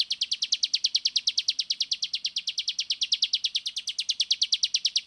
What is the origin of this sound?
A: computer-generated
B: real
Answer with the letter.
B